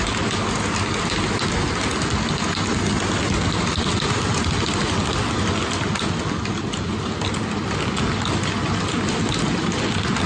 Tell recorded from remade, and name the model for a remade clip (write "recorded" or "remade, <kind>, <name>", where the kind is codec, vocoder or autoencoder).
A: recorded